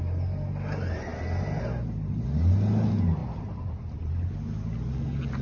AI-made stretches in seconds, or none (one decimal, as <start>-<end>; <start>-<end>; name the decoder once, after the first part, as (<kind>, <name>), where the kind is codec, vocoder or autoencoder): 3.2-4.1 (vocoder, BigVGAN v2)